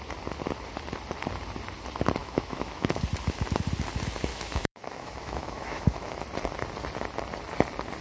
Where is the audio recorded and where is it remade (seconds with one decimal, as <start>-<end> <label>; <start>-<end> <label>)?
0.0-2.2 recorded; 2.2-3.0 remade; 3.0-4.3 recorded; 4.3-6.2 remade; 6.2-8.0 recorded